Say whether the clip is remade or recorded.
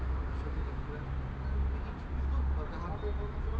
recorded